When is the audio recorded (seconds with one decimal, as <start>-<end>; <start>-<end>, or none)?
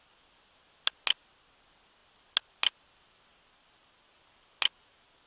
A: 0.0-5.3